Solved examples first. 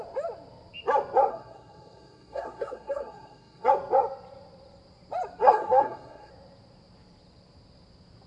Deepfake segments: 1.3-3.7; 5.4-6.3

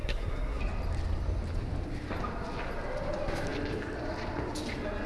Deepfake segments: 0.0-0.6

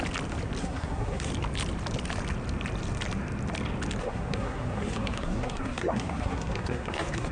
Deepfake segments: 0.6-1.3; 4.0-7.3

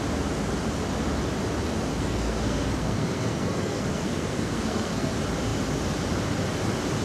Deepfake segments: 1.9-5.1

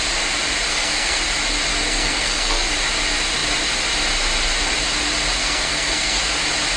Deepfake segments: 0.7-1.2; 1.7-2.7; 5.4-6.2